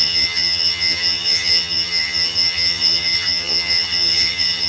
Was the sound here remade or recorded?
remade